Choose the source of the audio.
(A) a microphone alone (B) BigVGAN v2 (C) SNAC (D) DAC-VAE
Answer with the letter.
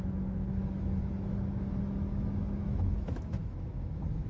D